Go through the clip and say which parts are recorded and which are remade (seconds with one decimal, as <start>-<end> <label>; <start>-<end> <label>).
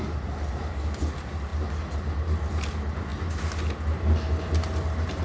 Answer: 0.0-5.2 recorded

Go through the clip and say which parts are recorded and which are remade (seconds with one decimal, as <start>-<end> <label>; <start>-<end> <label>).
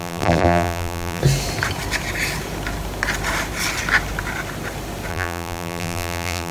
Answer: 0.0-1.2 remade; 1.2-5.1 recorded; 5.1-6.5 remade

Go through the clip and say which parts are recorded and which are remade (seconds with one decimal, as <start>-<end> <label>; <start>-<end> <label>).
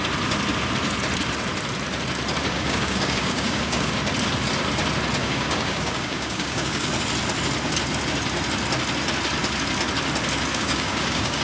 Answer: 0.0-2.5 recorded; 2.5-3.9 remade; 3.9-5.2 recorded; 5.2-6.9 remade; 6.9-10.5 recorded; 10.5-11.4 remade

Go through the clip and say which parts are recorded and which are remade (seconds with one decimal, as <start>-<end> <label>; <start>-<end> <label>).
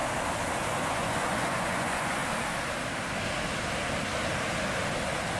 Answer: 0.0-0.8 recorded; 0.8-2.2 remade; 2.2-5.4 recorded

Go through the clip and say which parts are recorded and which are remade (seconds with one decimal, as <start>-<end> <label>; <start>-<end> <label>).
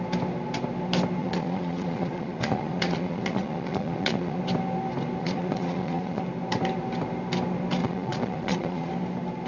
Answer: 0.0-1.2 recorded; 1.2-4.4 remade; 4.4-5.2 recorded; 5.2-6.2 remade; 6.2-7.8 recorded; 7.8-8.9 remade; 8.9-9.5 recorded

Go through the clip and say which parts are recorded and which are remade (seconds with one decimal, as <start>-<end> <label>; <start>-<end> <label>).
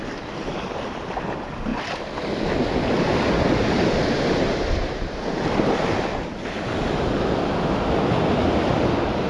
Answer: 0.0-9.3 recorded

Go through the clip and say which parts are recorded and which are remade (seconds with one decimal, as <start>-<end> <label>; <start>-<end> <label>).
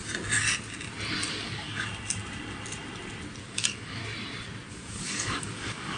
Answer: 0.0-1.3 recorded; 1.3-1.9 remade; 1.9-3.4 recorded; 3.4-4.0 remade; 4.0-4.7 recorded; 4.7-6.0 remade